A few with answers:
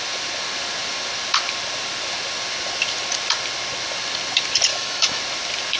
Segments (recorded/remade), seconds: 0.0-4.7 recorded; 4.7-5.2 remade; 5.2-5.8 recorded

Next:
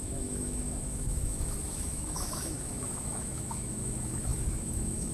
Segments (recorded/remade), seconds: 0.0-5.1 remade

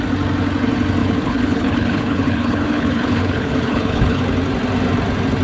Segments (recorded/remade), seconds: 0.0-1.0 recorded; 1.0-4.2 remade; 4.2-5.4 recorded

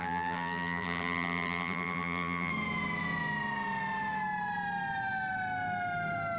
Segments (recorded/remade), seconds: 0.0-2.5 remade; 2.5-6.4 recorded

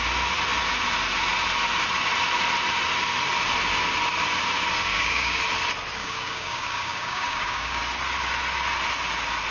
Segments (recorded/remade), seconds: 0.0-4.9 recorded; 4.9-5.4 remade; 5.4-6.0 recorded; 6.0-7.8 remade; 7.8-9.5 recorded